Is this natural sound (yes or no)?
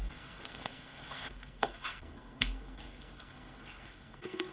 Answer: no